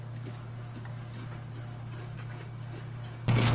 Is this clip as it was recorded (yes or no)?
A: yes